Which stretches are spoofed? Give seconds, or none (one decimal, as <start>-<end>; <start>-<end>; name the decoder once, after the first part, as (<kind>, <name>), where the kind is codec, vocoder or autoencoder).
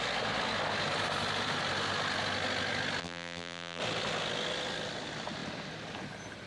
3.0-3.8 (vocoder, BigVGAN v2)